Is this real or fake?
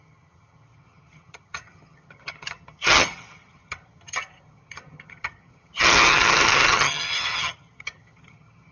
fake